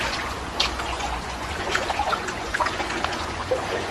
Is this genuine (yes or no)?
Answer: no